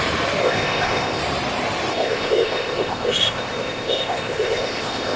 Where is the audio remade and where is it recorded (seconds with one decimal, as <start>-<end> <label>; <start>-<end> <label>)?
0.0-0.4 recorded; 0.4-1.2 remade; 1.2-1.9 recorded; 1.9-5.2 remade